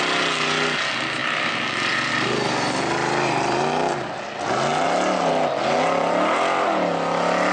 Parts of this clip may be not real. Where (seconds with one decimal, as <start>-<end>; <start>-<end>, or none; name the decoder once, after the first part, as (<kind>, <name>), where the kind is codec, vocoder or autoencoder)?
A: none